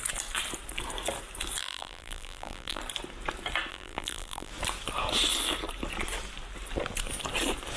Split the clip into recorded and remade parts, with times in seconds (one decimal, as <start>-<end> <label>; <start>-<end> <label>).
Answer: 0.0-1.6 recorded; 1.6-2.8 remade; 2.8-3.7 recorded; 3.7-4.5 remade; 4.5-7.8 recorded